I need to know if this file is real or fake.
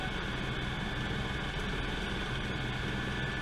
real